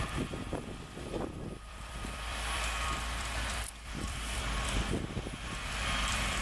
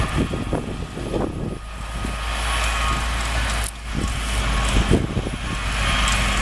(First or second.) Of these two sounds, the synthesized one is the first